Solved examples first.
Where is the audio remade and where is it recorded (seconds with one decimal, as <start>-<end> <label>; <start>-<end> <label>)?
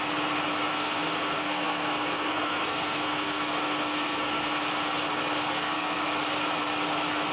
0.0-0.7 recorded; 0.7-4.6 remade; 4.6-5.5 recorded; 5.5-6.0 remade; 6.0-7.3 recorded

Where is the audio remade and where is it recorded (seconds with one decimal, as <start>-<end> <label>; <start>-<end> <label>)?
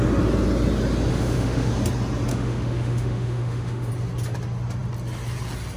0.0-1.1 recorded; 1.1-1.7 remade; 1.7-2.3 recorded; 2.3-3.9 remade; 3.9-5.8 recorded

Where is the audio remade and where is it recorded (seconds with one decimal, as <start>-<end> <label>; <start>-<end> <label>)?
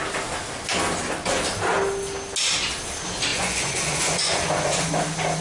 0.0-3.3 recorded; 3.3-4.9 remade; 4.9-5.4 recorded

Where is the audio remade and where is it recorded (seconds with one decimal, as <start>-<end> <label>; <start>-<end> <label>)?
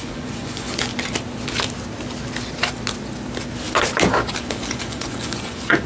0.0-0.9 remade; 0.9-4.4 recorded; 4.4-5.9 remade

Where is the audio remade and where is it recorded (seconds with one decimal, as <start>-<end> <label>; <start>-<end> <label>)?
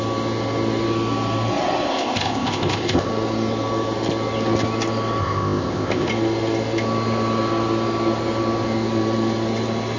0.0-1.9 recorded; 1.9-3.1 remade; 3.1-5.2 recorded; 5.2-6.1 remade; 6.1-10.0 recorded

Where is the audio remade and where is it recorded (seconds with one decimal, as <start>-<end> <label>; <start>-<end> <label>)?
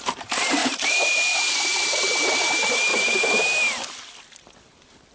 0.0-0.6 recorded; 0.6-1.4 remade; 1.4-2.9 recorded; 2.9-3.8 remade; 3.8-5.1 recorded